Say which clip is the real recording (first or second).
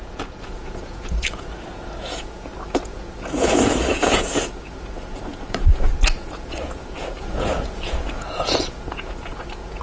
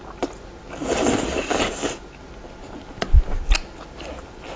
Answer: second